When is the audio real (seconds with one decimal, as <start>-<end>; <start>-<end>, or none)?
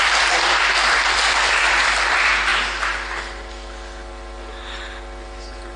2.5-5.8